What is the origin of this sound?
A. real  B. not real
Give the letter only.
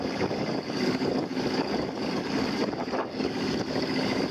B